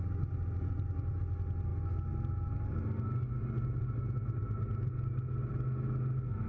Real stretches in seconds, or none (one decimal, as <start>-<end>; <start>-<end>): 0.0-6.5